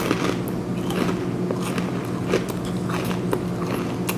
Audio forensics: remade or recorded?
recorded